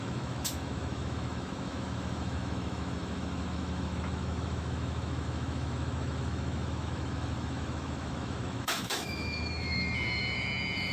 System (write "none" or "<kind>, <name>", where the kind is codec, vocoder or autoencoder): autoencoder, DAC-VAE